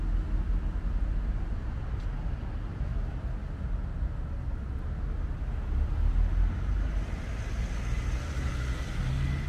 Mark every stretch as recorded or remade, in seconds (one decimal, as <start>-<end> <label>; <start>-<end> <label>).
0.0-9.5 recorded